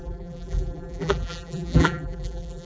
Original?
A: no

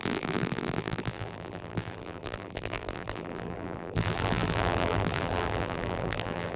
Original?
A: no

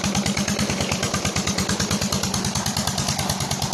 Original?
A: yes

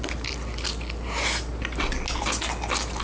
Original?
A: yes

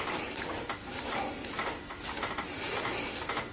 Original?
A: yes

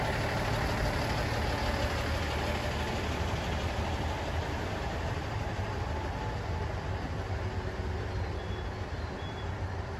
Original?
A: yes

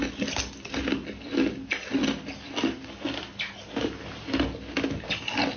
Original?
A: yes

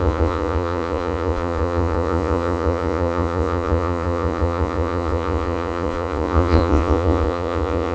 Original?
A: no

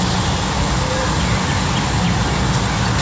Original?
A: yes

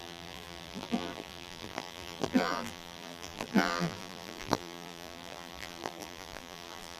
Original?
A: no